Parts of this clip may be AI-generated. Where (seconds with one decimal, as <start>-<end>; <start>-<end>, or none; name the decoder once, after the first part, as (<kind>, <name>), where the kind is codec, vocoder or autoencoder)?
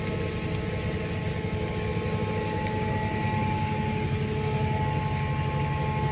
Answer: none